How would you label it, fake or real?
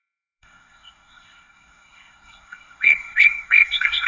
fake